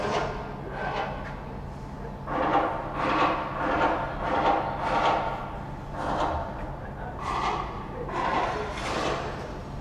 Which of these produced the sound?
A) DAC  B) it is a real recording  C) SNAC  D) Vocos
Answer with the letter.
B